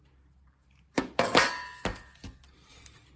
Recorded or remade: recorded